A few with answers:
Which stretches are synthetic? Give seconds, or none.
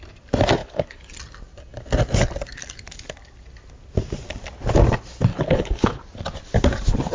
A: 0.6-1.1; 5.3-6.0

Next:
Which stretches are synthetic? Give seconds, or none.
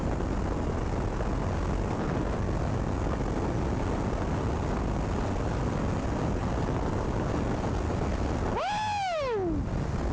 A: none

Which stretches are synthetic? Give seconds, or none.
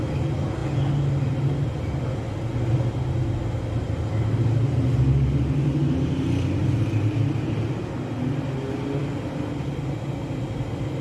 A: none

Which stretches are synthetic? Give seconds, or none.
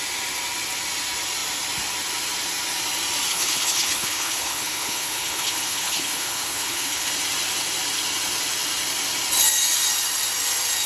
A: 3.3-7.1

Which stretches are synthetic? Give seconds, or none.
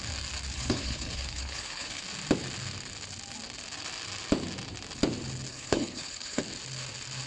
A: 0.5-2.0; 5.5-6.4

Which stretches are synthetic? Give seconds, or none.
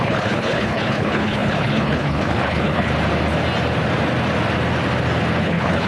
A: 0.0-2.9; 5.4-5.9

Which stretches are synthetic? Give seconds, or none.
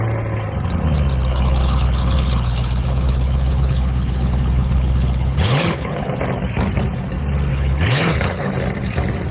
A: 1.3-6.1; 7.5-8.5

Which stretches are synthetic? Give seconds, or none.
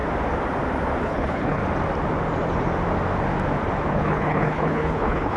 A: 1.0-1.6; 3.9-5.4